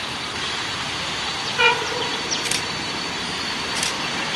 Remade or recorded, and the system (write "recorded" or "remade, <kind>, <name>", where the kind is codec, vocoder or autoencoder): remade, vocoder, BigVGAN v2